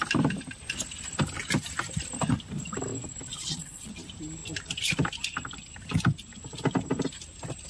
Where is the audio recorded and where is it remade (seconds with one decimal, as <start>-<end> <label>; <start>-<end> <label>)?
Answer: 0.0-3.3 recorded; 3.3-3.9 remade; 3.9-7.7 recorded